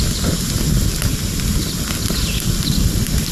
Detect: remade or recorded recorded